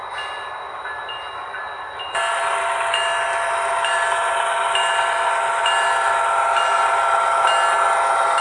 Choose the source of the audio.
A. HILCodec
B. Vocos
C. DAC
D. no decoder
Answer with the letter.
D